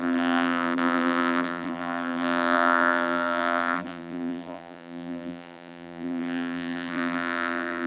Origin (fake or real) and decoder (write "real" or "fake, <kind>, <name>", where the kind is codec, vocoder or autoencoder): fake, vocoder, BigVGAN v2